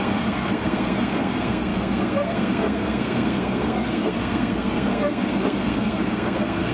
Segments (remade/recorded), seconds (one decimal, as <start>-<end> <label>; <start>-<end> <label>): 0.0-6.7 remade